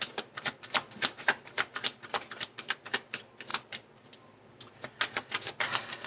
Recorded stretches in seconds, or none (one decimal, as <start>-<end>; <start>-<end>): 0.0-1.9; 2.8-6.1